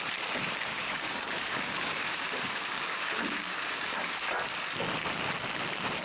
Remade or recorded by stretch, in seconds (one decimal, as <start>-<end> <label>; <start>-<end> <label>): 0.0-0.7 recorded; 0.7-4.3 remade; 4.3-6.0 recorded